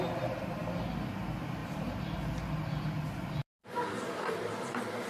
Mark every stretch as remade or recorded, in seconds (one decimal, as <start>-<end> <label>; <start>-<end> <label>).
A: 0.0-1.6 recorded; 1.6-2.9 remade; 2.9-3.4 recorded; 3.4-4.5 remade; 4.5-5.1 recorded

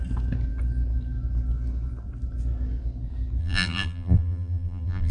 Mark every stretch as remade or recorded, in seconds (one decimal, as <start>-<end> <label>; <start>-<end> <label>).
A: 0.0-3.4 recorded; 3.4-5.1 remade

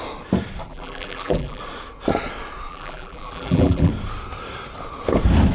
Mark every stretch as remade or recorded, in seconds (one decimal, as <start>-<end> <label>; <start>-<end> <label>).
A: 0.0-0.7 recorded; 0.7-1.6 remade; 1.6-2.7 recorded; 2.7-3.9 remade; 3.9-5.5 recorded

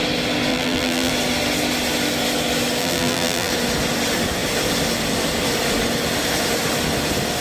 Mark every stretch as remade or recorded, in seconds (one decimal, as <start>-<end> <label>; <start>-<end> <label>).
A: 0.0-0.5 recorded; 0.5-1.1 remade; 1.1-2.8 recorded; 2.8-3.5 remade; 3.5-7.4 recorded

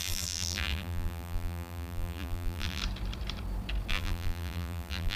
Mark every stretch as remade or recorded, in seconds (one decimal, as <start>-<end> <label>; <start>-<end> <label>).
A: 0.0-2.8 remade; 2.8-3.9 recorded; 3.9-5.2 remade

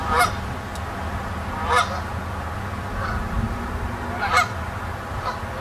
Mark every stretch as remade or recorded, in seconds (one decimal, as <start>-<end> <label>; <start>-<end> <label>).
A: 0.0-5.6 recorded

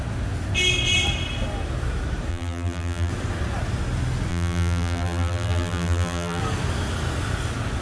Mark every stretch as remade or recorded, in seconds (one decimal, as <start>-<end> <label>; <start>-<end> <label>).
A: 0.0-2.3 recorded; 2.3-3.1 remade; 3.1-4.3 recorded; 4.3-6.4 remade; 6.4-7.8 recorded

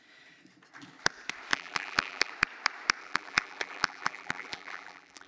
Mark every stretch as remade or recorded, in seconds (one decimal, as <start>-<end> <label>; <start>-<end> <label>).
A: 0.0-1.5 recorded; 1.5-2.3 remade; 2.3-3.0 recorded; 3.0-5.3 remade